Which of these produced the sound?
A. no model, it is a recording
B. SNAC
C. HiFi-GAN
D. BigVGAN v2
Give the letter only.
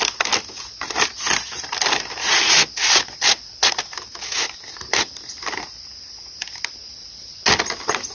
A